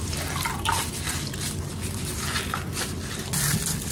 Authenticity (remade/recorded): recorded